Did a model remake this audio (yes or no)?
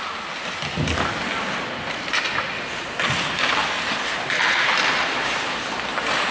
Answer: no